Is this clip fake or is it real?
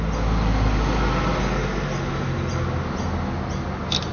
real